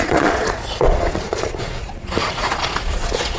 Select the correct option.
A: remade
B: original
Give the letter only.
A